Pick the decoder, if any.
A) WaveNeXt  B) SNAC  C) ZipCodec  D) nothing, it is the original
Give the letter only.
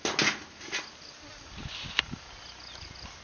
D